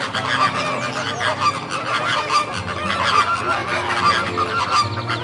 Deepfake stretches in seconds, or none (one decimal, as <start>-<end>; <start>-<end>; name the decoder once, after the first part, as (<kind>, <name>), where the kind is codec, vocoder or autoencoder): 1.3-2.5 (vocoder, BigVGAN v2)